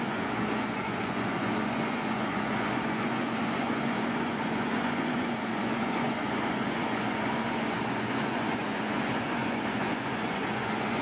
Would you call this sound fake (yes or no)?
yes